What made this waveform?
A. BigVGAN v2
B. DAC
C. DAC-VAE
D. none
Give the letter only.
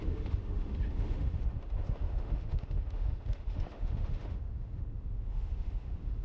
C